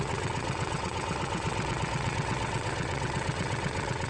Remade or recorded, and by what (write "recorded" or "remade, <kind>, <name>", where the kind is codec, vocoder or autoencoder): remade, vocoder, WaveNeXt